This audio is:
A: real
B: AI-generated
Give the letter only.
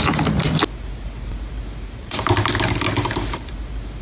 A